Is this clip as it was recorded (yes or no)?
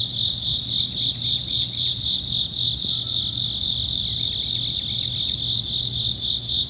yes